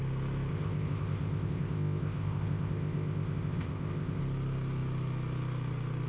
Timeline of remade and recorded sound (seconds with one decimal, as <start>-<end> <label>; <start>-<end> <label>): 0.0-0.5 recorded; 0.5-4.2 remade; 4.2-6.1 recorded